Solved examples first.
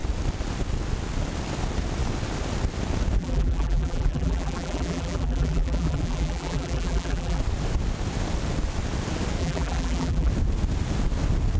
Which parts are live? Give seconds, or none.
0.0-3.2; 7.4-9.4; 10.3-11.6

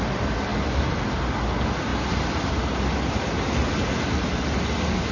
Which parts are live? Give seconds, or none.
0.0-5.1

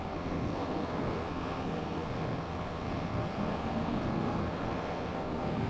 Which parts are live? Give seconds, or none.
none

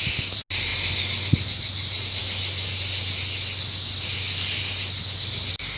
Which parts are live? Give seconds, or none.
0.0-5.8

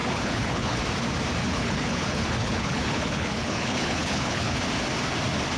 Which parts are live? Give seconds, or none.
0.8-1.4; 4.6-5.6

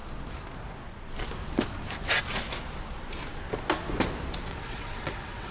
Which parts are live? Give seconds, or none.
0.0-4.5

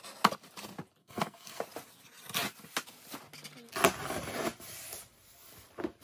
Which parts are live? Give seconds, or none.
0.0-1.0; 1.6-6.0